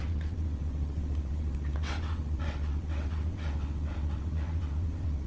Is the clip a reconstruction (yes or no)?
yes